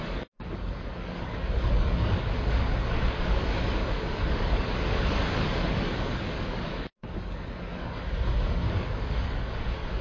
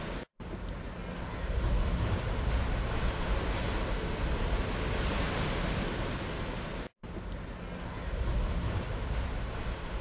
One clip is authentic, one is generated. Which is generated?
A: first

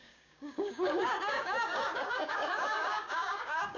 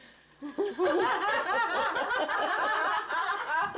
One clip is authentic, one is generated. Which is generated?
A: first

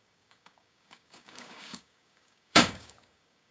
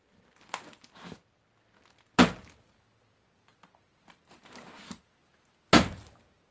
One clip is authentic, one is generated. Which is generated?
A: first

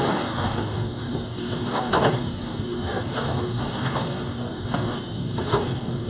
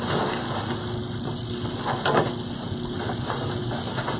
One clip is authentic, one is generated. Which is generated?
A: first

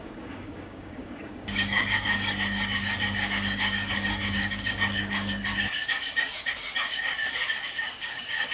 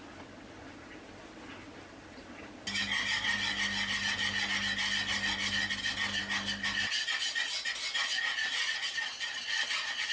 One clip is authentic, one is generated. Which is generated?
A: first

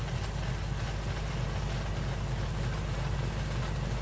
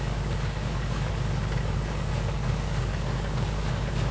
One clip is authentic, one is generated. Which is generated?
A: second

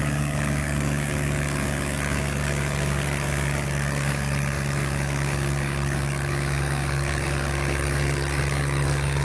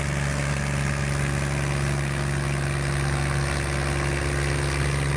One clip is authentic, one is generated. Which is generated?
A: first